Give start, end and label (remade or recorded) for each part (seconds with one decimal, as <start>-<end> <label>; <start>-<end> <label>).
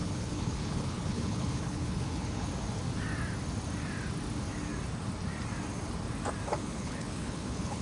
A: 0.0-2.5 remade; 2.5-6.6 recorded; 6.6-7.8 remade